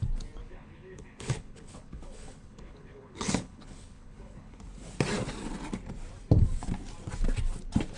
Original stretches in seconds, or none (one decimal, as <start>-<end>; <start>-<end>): 0.0-0.4; 4.6-8.0